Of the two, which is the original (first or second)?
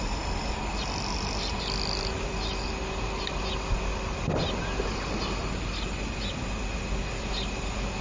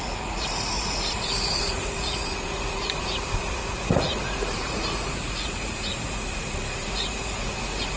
first